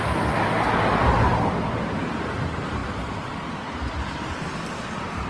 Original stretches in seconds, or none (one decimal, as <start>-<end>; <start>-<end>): 0.0-1.3; 1.9-2.8; 3.9-5.3